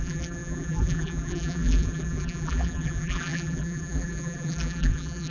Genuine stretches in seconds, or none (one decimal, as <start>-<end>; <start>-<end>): none